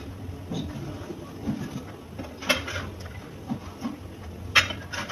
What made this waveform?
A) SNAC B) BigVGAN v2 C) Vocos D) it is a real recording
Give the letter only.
D